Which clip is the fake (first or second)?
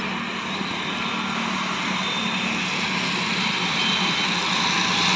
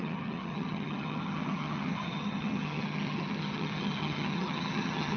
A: second